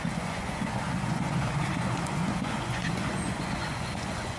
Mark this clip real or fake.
fake